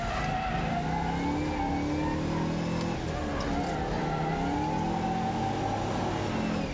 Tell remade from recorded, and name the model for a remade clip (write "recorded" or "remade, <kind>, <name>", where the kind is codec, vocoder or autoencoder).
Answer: recorded